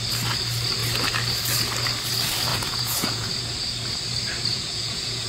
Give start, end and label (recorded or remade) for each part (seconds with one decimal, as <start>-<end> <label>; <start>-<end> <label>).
0.0-2.5 recorded; 2.5-3.3 remade; 3.3-4.5 recorded; 4.5-5.3 remade